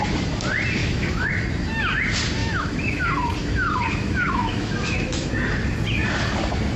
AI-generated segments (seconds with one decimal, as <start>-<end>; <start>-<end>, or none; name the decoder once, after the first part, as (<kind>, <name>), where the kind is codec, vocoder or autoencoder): 0.8-1.3 (autoencoder, DAC-VAE); 2.4-3.0; 3.4-5.3